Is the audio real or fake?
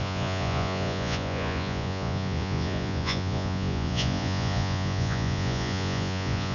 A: fake